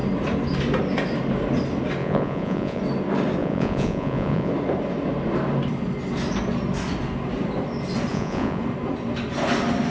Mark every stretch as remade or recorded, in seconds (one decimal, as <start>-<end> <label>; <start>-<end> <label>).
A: 0.0-2.0 recorded; 2.0-2.8 remade; 2.8-3.4 recorded; 3.4-4.5 remade; 4.5-8.1 recorded; 8.1-8.6 remade; 8.6-9.9 recorded